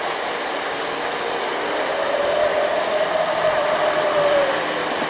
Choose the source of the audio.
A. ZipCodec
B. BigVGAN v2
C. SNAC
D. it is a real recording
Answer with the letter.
B